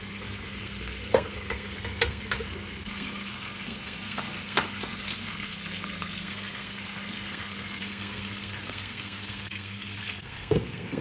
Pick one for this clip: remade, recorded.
remade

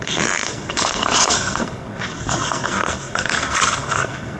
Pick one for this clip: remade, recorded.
remade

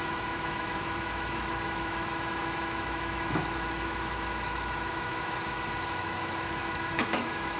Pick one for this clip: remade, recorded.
remade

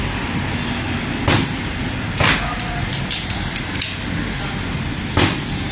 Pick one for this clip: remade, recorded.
recorded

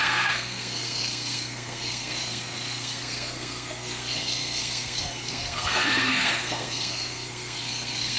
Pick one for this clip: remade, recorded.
remade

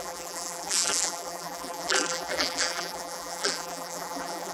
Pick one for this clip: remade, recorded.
remade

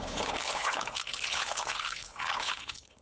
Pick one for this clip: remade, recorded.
remade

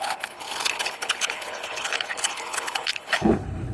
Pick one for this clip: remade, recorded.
remade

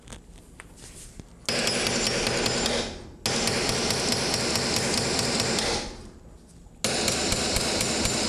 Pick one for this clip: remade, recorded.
recorded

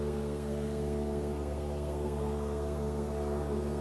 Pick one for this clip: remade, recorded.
remade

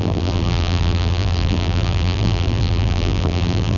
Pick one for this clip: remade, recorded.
remade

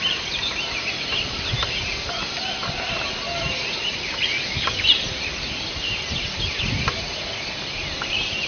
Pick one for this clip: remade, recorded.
recorded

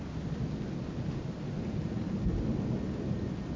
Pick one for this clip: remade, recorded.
recorded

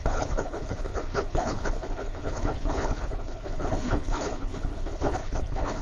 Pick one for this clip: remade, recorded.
remade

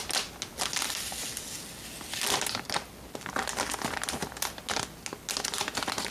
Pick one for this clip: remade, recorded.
recorded